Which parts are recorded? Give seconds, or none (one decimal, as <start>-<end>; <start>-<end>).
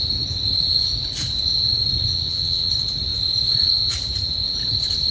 0.0-2.1; 2.7-5.1